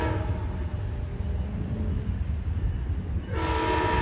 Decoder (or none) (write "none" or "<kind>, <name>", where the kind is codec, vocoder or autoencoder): none